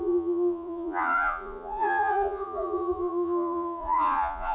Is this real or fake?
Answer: fake